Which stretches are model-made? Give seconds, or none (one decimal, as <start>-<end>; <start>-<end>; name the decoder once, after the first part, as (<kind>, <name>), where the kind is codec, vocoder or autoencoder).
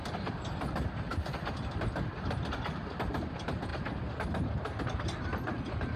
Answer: none